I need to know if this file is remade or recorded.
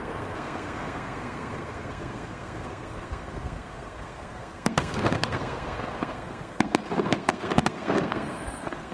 remade